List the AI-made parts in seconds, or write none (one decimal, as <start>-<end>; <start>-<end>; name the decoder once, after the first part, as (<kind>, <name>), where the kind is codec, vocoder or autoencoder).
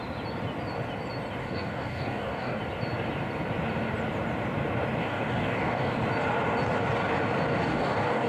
1.4-2.6 (codec, DAC); 5.0-5.9; 7.5-8.3